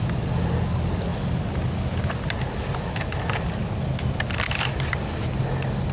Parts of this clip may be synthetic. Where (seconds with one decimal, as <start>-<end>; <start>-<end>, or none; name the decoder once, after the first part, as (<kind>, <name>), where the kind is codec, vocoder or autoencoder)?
none

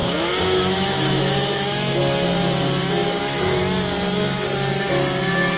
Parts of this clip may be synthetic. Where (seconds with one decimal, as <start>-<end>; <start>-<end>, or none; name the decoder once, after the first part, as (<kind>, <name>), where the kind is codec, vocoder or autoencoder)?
0.0-2.0 (autoencoder, DAC-VAE); 3.0-3.6

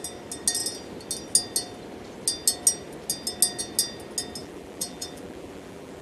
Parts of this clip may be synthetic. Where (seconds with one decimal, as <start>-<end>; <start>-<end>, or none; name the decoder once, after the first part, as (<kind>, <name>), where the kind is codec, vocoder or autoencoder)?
4.4-6.0 (vocoder, BigVGAN v2)

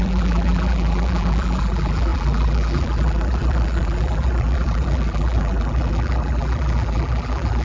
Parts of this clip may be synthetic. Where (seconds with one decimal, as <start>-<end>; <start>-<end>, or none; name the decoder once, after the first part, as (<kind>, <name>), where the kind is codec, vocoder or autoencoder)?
0.0-7.6 (vocoder, BigVGAN v2)